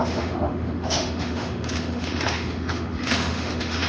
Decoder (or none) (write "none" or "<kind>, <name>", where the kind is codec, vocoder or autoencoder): autoencoder, DAC-VAE